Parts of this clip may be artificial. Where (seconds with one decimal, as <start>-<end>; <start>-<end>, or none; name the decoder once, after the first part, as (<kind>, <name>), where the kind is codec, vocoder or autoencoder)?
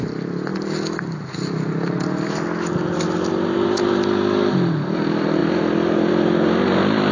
none